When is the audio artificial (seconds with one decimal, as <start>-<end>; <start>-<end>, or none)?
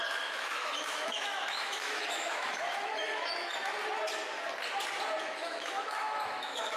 0.0-3.5; 5.2-6.8